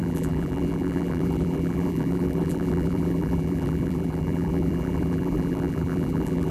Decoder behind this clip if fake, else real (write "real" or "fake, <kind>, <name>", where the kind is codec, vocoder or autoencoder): fake, vocoder, BigVGAN v2